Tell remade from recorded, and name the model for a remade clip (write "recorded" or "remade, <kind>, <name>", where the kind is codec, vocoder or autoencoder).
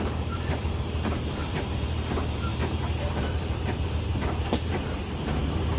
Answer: remade, vocoder, BigVGAN v2